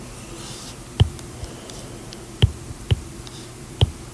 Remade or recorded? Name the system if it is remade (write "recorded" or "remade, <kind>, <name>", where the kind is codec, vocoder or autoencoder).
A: recorded